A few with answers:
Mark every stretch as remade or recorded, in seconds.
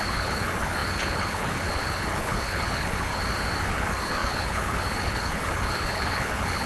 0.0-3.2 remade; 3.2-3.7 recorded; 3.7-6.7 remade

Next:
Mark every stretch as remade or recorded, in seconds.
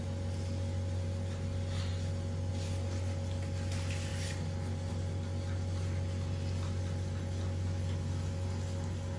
0.0-9.2 recorded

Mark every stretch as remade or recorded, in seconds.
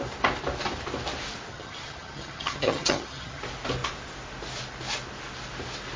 0.0-1.5 recorded; 1.5-3.4 remade; 3.4-6.0 recorded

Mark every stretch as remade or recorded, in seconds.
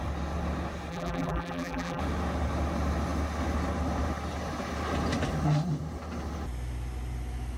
0.0-0.9 recorded; 0.9-2.0 remade; 2.0-7.6 recorded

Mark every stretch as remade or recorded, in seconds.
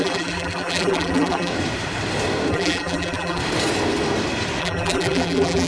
0.0-1.5 remade; 1.5-2.5 recorded; 2.5-3.4 remade; 3.4-4.6 recorded; 4.6-5.7 remade